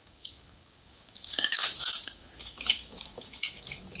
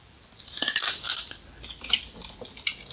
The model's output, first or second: first